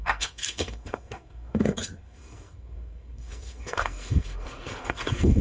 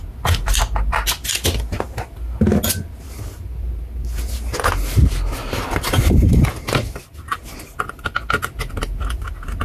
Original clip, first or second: second